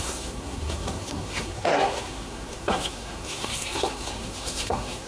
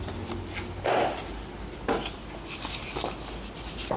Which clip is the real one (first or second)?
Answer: second